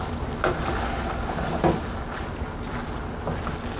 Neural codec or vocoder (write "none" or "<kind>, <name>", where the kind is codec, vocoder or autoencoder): none